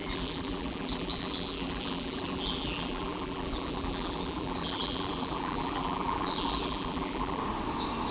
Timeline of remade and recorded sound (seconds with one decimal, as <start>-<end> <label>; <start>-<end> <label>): 0.0-7.4 remade; 7.4-8.1 recorded